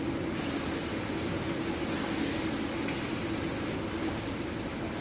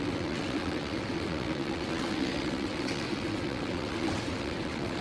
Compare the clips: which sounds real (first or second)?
first